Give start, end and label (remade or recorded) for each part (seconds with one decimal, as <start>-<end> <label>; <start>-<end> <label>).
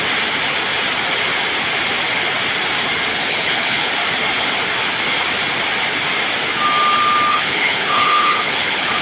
0.0-3.1 recorded; 3.1-3.9 remade; 3.9-7.3 recorded; 7.3-9.0 remade